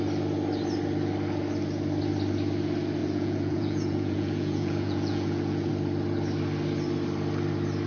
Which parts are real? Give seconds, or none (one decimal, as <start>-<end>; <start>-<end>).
0.0-3.0; 5.7-7.9